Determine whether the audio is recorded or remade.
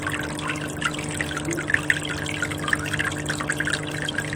recorded